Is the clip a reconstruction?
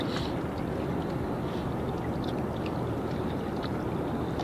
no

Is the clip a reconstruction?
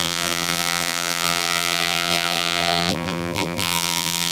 yes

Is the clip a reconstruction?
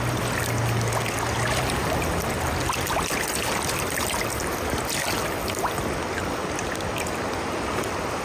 no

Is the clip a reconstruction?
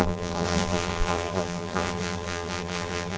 yes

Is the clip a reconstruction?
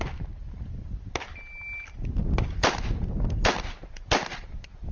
no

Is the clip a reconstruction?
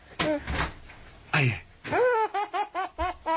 no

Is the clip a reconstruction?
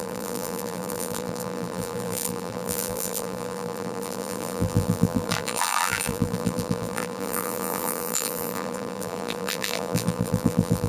yes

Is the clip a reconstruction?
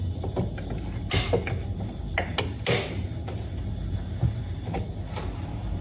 no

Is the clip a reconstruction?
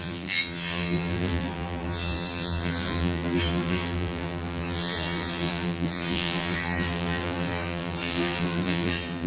yes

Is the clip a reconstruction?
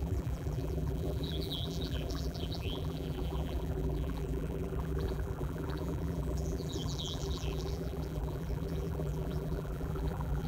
yes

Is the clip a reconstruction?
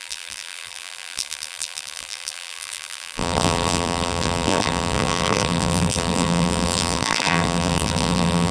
yes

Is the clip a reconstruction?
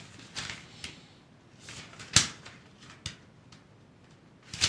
no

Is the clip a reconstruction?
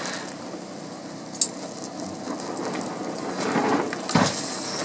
no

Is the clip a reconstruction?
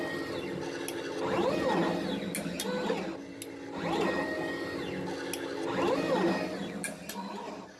no